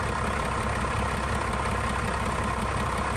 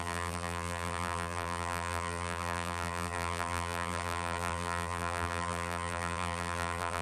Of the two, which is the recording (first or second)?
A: first